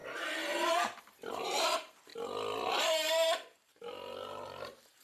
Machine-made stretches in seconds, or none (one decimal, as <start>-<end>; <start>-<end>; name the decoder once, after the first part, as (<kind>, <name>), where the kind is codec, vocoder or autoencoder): 1.3-2.1 (vocoder, BigVGAN v2); 2.7-5.0